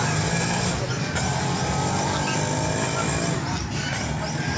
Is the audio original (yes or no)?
yes